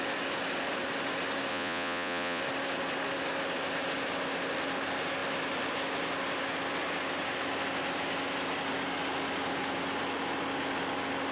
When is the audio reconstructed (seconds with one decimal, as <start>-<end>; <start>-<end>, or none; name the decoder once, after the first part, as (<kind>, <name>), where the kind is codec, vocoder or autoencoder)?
1.5-2.4 (vocoder, Vocos)